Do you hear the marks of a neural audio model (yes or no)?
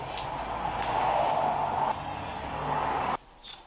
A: no